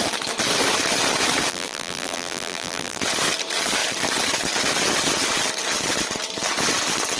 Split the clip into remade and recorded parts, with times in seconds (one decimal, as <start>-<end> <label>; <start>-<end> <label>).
0.0-1.5 recorded; 1.5-3.0 remade; 3.0-7.2 recorded